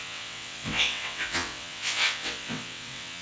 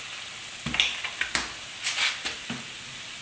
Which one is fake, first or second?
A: first